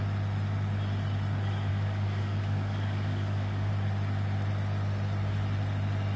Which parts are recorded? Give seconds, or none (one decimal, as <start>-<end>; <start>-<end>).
0.0-1.7; 3.7-6.2